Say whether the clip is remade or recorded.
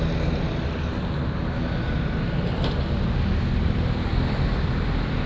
recorded